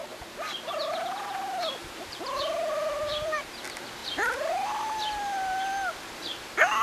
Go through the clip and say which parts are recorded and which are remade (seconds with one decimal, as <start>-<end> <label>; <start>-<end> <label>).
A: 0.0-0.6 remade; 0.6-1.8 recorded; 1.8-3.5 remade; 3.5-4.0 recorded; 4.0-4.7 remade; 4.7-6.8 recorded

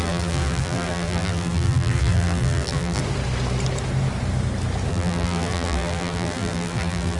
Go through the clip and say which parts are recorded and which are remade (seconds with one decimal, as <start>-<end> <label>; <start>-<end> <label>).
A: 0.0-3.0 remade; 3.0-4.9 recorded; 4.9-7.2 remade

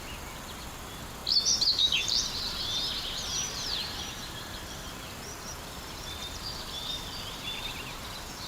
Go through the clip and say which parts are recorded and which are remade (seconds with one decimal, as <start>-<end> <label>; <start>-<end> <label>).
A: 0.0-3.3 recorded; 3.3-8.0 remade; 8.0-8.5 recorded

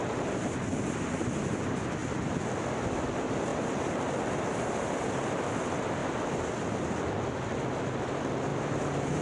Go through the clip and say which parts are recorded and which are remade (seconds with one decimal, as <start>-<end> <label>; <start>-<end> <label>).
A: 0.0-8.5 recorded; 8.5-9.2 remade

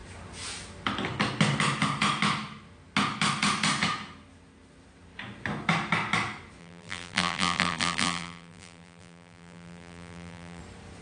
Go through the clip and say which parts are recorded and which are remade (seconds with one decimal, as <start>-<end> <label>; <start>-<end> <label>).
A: 0.0-6.6 recorded; 6.6-10.6 remade; 10.6-11.0 recorded